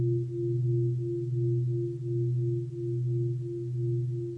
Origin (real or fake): real